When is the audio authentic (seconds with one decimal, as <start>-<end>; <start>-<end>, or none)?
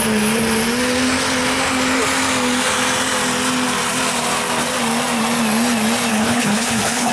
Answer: 0.0-6.1